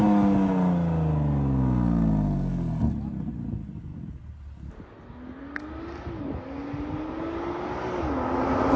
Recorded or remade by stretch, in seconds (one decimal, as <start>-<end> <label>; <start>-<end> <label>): 0.0-8.8 recorded